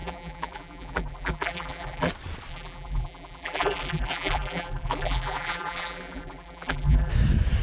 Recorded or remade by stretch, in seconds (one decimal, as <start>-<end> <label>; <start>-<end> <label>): 0.0-2.1 remade; 2.1-2.5 recorded; 2.5-7.1 remade; 7.1-7.6 recorded